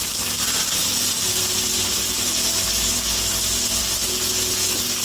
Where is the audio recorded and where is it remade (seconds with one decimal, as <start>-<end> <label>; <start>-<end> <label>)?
0.0-5.0 recorded